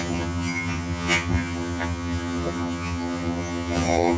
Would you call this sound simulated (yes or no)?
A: yes